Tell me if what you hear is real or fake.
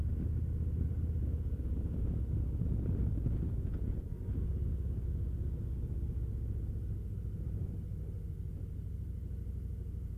fake